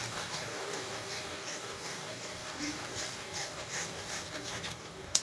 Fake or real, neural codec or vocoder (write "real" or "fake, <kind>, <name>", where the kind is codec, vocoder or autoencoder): fake, codec, DAC